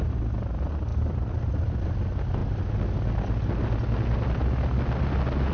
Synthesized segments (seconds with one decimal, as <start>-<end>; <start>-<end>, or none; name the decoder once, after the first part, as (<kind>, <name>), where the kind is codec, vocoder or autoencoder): none

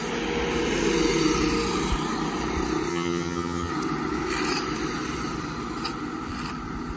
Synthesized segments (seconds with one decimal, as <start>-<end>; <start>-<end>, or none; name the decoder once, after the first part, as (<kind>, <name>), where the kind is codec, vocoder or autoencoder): 2.9-3.7 (vocoder, HiFi-GAN)

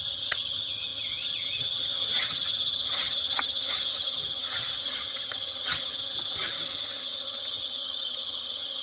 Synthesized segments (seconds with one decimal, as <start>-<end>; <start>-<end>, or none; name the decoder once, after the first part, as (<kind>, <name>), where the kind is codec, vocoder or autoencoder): 0.0-8.8 (vocoder, HiFi-GAN)

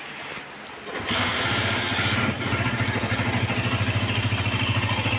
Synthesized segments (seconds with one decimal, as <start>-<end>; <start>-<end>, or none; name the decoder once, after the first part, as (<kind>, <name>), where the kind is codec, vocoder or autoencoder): none

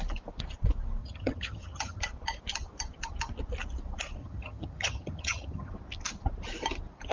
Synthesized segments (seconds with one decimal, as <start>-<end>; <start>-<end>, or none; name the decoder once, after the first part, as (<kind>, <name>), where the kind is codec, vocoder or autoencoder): 1.0-2.0 (vocoder, HiFi-GAN); 4.2-5.7

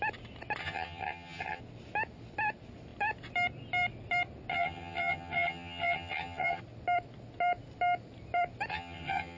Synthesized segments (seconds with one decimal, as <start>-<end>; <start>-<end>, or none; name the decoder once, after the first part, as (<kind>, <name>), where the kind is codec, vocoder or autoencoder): 0.6-1.6 (vocoder, HiFi-GAN); 4.5-6.6; 8.7-9.4

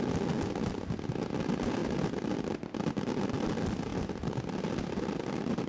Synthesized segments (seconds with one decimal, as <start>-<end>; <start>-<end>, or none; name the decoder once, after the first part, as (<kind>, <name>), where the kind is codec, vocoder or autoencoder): none

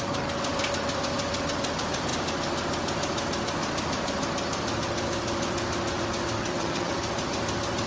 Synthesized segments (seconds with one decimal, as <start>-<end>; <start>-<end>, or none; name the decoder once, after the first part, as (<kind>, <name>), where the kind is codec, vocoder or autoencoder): 6.4-6.9 (vocoder, HiFi-GAN)